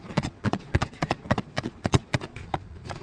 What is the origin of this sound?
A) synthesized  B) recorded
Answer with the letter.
A